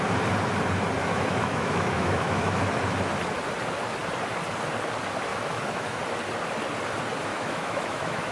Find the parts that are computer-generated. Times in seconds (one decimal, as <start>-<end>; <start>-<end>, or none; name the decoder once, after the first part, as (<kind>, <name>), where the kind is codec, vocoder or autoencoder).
1.0-2.7 (autoencoder, DAC-VAE); 5.3-6.0; 7.3-8.3